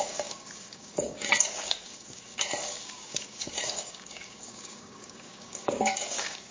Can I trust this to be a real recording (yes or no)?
no